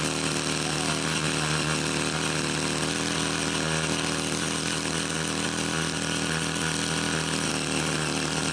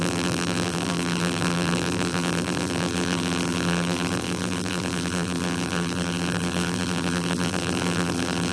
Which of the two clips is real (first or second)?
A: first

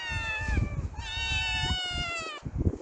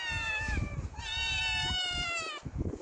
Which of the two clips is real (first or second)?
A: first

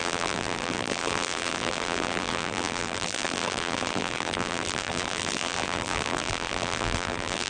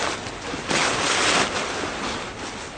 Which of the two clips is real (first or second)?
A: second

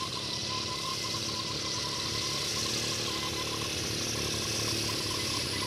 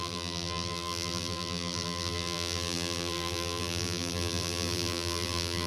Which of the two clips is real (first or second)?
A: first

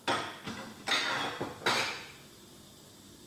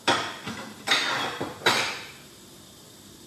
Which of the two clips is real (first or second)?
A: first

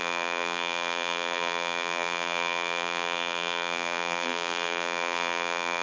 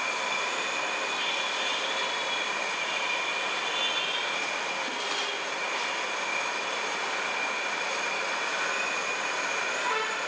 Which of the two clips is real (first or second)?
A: second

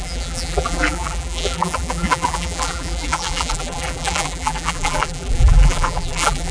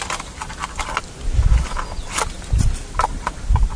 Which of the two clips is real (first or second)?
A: second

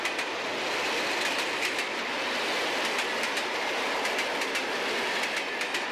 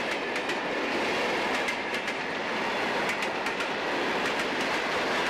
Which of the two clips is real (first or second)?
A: first